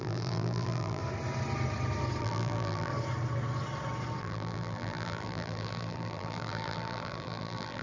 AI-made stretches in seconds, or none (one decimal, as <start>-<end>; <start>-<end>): 0.0-1.0; 2.2-2.9; 4.2-7.8